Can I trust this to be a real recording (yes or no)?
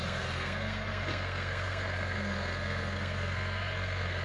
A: no